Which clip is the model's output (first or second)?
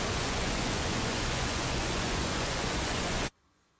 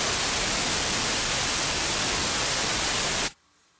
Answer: first